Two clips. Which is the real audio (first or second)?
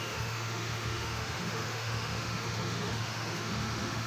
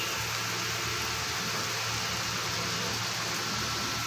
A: second